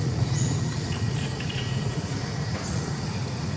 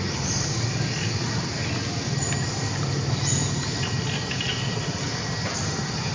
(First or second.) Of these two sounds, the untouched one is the second